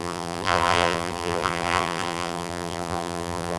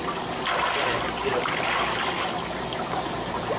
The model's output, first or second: first